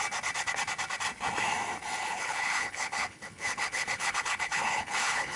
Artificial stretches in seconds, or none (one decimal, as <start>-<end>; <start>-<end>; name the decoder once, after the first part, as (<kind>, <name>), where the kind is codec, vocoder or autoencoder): 2.0-5.4 (codec, HILCodec)